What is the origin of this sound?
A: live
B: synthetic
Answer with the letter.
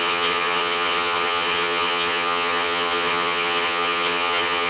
B